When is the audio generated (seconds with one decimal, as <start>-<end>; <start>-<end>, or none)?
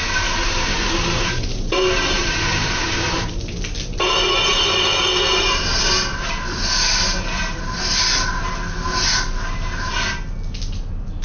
0.0-3.4; 4.5-6.3